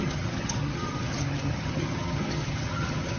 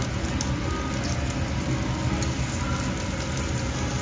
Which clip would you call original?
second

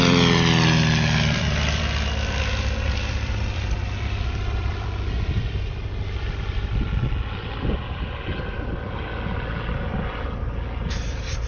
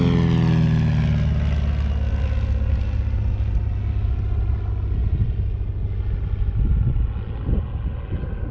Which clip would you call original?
second